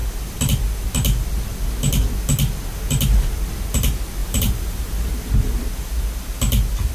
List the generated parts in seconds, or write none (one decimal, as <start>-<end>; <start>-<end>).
4.2-5.1